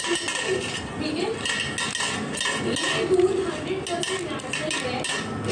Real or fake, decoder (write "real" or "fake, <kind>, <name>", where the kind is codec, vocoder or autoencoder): real